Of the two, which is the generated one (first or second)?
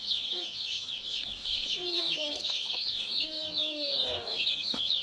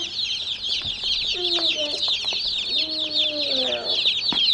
first